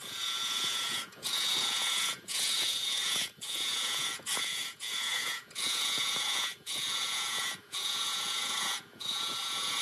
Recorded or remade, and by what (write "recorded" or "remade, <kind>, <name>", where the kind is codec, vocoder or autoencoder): remade, vocoder, Vocos